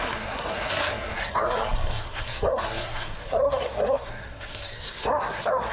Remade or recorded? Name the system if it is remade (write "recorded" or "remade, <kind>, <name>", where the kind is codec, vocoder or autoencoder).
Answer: remade, codec, SNAC